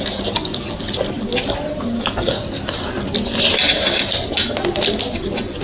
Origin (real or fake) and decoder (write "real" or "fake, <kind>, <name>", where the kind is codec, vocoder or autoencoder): real